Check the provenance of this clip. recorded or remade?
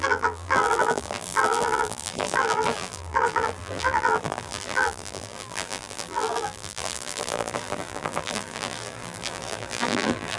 remade